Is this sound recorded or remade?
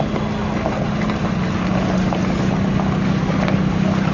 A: recorded